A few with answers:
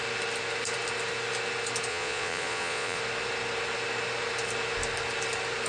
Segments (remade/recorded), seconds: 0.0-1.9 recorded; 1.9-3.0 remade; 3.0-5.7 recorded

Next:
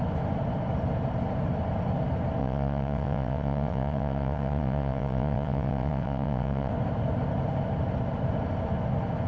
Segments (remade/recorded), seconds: 0.0-2.4 recorded; 2.4-6.7 remade; 6.7-9.3 recorded

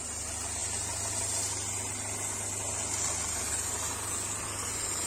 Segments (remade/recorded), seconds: 0.0-5.1 recorded

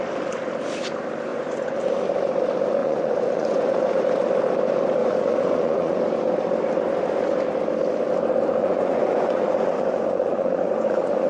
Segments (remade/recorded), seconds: 0.0-1.3 recorded; 1.3-1.8 remade; 1.8-2.8 recorded; 2.8-4.0 remade; 4.0-5.0 recorded; 5.0-6.0 remade; 6.0-8.6 recorded; 8.6-11.3 remade

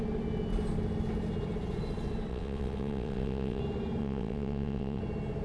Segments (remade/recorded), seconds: 0.0-2.3 recorded; 2.3-3.6 remade; 3.6-4.0 recorded; 4.0-5.0 remade; 5.0-5.4 recorded

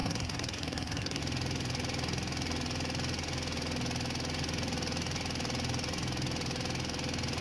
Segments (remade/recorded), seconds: 0.0-1.2 remade; 1.2-7.4 recorded